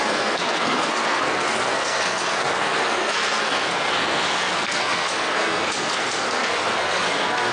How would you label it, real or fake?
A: fake